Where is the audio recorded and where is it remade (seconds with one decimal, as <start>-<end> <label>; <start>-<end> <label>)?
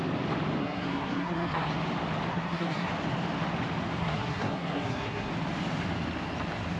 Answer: 0.0-0.6 recorded; 0.6-1.7 remade; 1.7-2.3 recorded; 2.3-2.9 remade; 2.9-4.0 recorded; 4.0-5.3 remade; 5.3-6.8 recorded